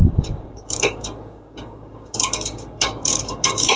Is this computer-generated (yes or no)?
yes